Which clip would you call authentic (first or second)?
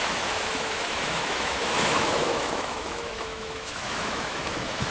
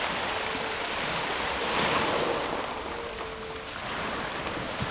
second